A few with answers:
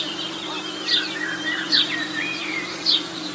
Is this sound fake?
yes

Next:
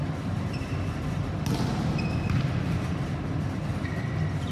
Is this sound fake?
no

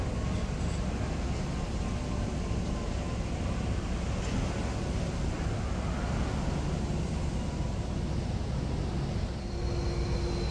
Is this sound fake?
no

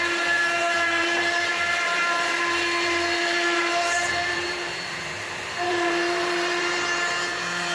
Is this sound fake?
yes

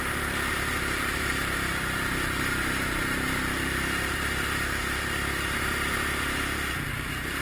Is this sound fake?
yes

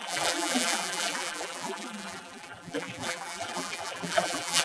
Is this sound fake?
yes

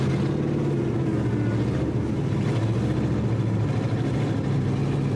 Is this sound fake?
no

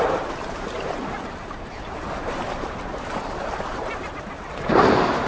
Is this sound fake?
yes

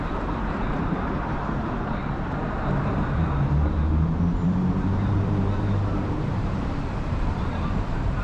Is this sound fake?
yes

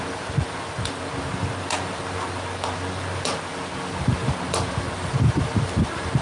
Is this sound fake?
no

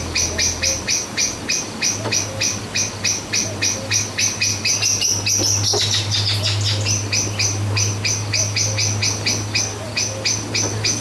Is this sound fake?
no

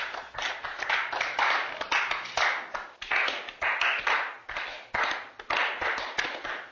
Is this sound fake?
yes